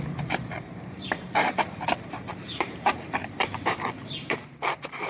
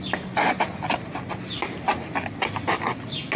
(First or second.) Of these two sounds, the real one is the second